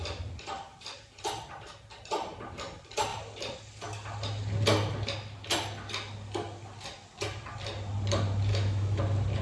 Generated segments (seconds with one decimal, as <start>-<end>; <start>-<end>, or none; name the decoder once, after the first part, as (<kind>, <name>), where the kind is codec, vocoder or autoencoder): 8.5-9.0 (autoencoder, DAC-VAE)